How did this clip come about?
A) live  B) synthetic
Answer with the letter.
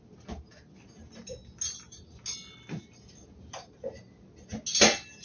A